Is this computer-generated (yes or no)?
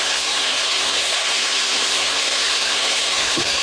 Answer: yes